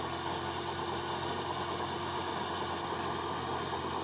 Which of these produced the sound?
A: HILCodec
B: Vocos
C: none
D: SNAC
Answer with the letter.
C